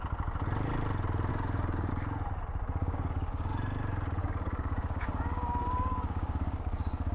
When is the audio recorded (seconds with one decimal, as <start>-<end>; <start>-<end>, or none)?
0.0-1.3; 1.9-2.8; 3.5-4.2